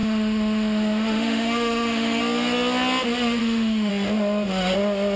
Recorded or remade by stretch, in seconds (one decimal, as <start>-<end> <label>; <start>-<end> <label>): 0.0-2.2 remade; 2.2-3.4 recorded; 3.4-3.9 remade; 3.9-5.2 recorded